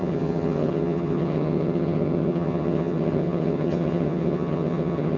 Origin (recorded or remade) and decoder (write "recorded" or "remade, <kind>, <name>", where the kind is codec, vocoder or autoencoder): remade, vocoder, HiFi-GAN